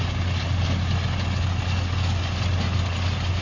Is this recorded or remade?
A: recorded